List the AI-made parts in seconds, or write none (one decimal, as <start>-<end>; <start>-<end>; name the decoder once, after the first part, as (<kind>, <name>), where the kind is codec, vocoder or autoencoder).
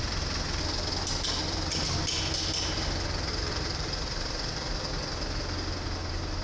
3.3-4.5 (vocoder, BigVGAN v2)